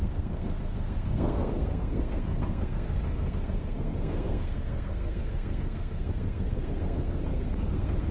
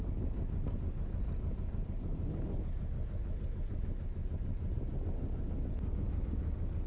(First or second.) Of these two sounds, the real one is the second